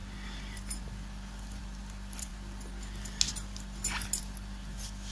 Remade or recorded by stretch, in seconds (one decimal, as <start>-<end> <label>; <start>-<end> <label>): 0.0-5.1 recorded